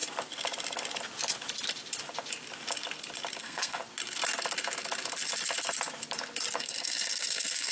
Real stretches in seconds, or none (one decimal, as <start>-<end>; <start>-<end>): 0.0-3.4; 3.8-6.6